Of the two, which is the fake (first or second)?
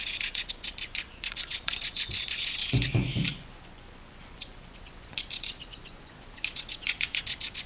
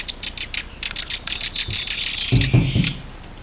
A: first